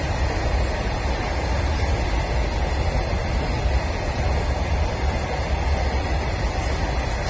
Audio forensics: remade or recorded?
recorded